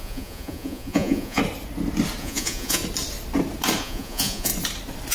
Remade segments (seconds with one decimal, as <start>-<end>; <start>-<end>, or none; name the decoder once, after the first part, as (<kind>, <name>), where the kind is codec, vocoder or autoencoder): 0.0-1.4 (vocoder, Vocos); 2.2-2.8; 3.8-4.5